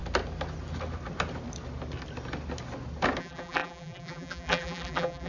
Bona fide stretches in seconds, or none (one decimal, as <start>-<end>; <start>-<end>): 0.0-3.2